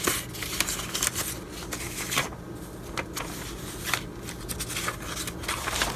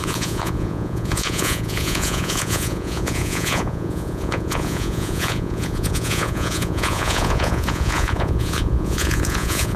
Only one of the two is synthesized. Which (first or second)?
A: second